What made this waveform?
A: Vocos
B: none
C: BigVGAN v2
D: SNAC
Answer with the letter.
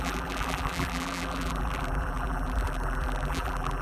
C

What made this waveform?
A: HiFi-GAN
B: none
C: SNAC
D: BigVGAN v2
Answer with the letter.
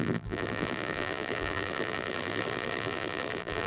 D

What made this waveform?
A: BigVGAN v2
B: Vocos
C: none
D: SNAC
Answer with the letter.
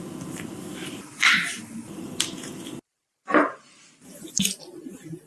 A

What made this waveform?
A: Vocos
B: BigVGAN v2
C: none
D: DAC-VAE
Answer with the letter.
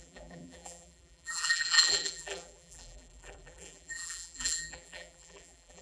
B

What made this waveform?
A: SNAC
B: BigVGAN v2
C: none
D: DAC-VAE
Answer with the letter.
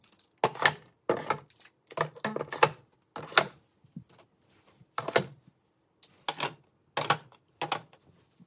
C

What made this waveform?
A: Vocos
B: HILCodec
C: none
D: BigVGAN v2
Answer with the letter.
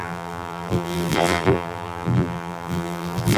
D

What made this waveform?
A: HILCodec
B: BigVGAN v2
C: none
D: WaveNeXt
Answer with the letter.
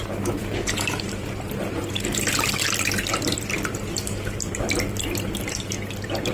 B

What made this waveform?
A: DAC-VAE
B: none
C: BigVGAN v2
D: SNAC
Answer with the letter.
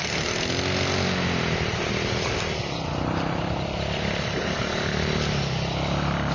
B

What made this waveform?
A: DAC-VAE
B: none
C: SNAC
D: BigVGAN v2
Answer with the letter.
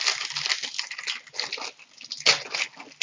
B